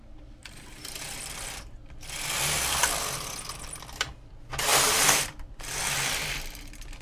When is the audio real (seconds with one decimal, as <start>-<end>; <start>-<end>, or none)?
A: 0.0-0.4; 1.0-4.7; 5.8-7.0